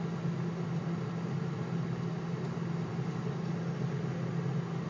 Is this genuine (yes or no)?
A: yes